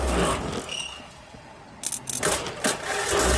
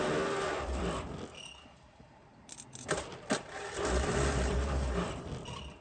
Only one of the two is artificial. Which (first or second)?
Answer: second